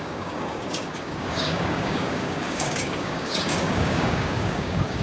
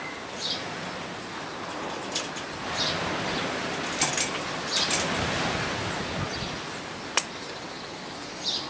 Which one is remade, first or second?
first